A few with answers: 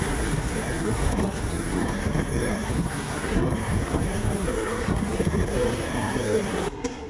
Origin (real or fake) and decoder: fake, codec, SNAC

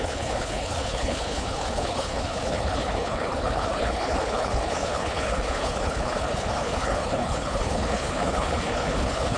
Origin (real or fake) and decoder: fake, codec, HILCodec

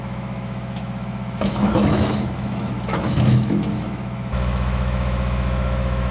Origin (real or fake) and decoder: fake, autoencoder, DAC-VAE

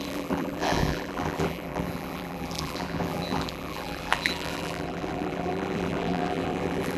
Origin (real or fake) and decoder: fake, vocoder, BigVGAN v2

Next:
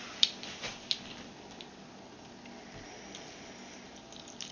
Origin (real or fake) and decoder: real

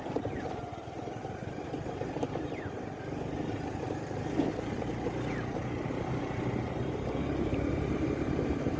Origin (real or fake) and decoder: fake, vocoder, BigVGAN v2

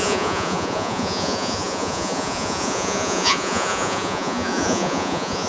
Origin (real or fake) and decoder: fake, vocoder, Vocos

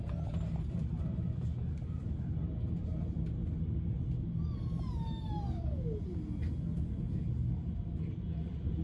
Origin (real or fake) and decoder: real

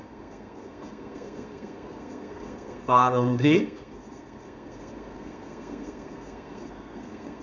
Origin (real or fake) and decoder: fake, codec, SNAC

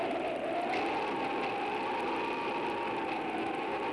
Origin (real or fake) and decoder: real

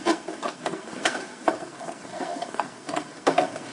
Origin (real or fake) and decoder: fake, codec, SNAC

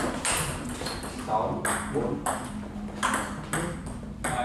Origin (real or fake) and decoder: real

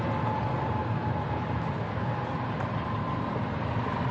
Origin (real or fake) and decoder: real